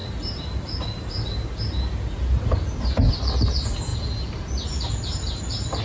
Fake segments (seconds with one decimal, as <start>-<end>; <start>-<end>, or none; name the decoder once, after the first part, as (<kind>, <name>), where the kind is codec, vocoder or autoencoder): none